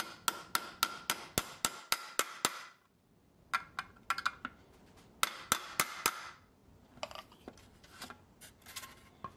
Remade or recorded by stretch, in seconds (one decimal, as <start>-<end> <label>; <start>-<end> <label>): 0.0-9.4 recorded